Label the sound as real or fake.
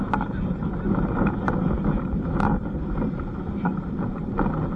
real